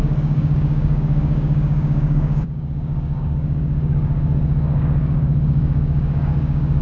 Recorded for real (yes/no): no